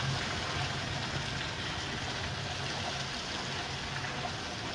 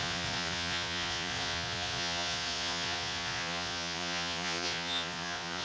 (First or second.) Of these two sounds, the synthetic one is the second